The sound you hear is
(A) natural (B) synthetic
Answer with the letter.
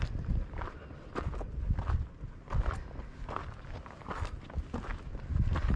A